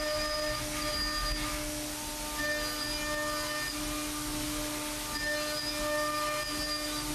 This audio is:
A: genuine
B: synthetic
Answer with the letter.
A